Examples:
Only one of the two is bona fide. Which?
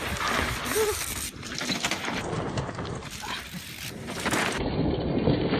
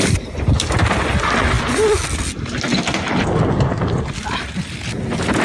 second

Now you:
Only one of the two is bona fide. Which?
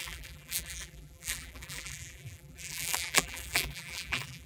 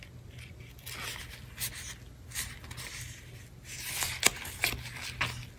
second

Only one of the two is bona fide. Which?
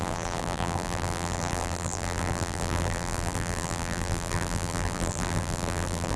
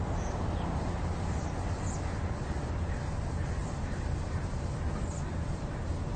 second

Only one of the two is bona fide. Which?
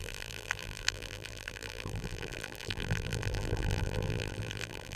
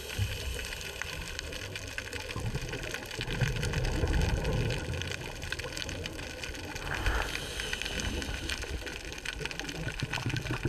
second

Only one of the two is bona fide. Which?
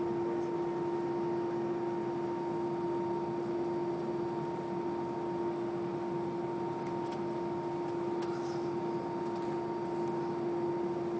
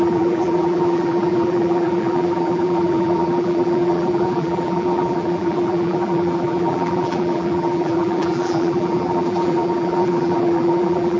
first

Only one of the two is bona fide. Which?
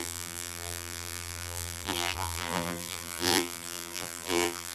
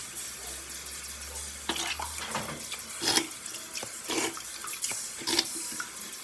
second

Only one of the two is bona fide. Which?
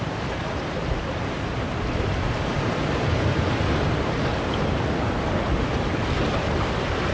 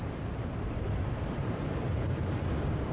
first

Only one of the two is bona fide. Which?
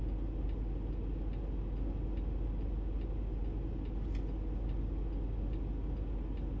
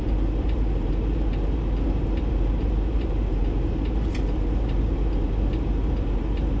first